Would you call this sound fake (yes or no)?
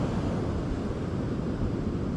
no